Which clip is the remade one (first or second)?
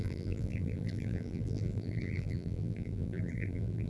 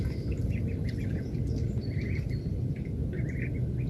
first